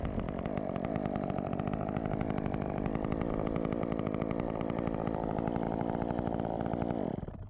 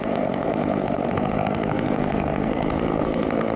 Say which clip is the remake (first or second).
second